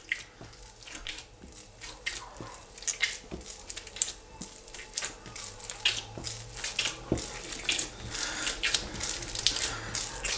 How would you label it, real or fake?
real